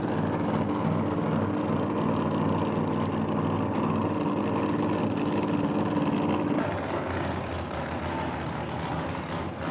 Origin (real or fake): real